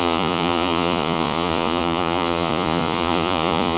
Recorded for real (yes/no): no